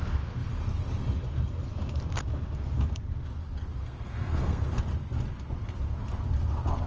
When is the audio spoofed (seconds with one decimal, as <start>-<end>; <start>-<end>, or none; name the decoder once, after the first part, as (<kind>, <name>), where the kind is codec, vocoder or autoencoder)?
3.8-4.8 (codec, SNAC)